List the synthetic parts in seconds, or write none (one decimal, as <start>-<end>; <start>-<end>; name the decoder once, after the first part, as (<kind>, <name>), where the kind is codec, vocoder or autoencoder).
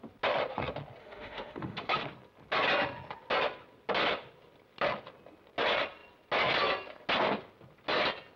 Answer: 1.0-2.0 (autoencoder, DAC-VAE)